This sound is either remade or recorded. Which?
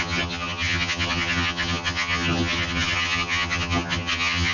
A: remade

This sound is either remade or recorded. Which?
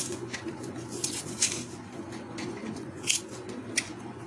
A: remade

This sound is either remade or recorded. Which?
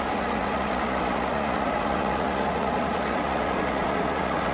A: remade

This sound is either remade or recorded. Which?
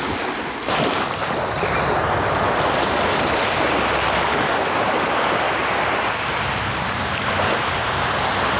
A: recorded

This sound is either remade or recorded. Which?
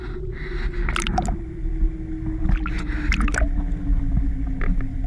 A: recorded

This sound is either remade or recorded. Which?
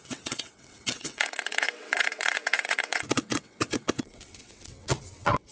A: remade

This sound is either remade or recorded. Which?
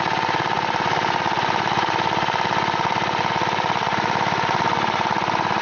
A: remade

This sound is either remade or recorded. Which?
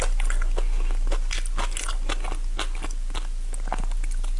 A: recorded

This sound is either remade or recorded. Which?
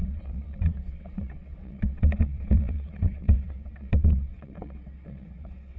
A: remade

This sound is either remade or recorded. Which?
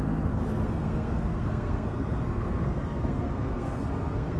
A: remade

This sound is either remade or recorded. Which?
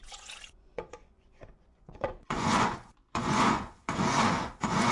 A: remade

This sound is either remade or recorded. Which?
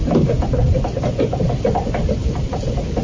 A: recorded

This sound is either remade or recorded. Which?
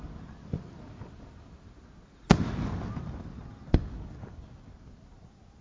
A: recorded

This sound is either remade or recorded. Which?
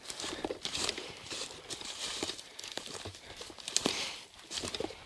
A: remade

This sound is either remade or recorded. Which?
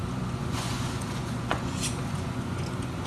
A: remade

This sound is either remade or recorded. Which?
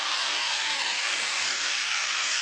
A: remade